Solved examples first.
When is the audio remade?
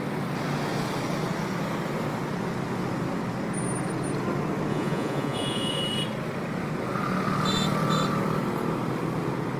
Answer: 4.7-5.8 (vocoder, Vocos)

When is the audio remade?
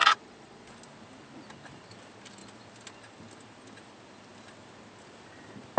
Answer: 0.0-0.7 (vocoder, Vocos)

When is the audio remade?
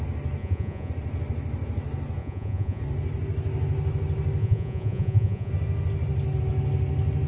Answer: 0.4-0.9 (vocoder, Vocos); 2.2-2.8; 4.4-5.5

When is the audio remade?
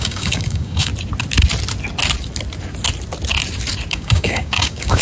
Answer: 0.0-0.9 (codec, DAC); 3.9-5.0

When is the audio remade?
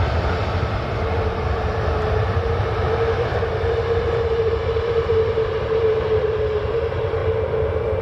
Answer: 0.0-8.0 (vocoder, BigVGAN v2)